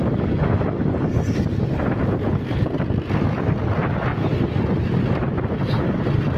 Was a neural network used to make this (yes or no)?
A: no